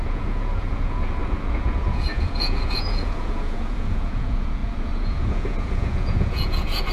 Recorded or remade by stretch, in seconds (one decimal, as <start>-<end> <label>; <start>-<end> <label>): 0.0-6.9 remade